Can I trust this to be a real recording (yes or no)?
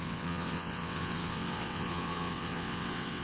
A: no